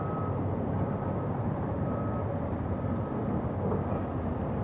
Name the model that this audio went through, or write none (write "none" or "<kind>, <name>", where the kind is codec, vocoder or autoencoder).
none